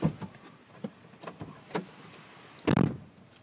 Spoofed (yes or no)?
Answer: no